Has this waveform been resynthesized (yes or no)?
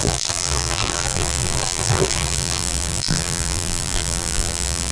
yes